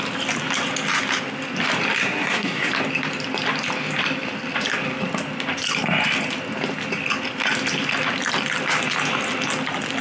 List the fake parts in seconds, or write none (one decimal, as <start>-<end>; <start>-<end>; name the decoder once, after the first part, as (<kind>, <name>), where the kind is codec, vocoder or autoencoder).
2.0-2.7 (codec, SNAC)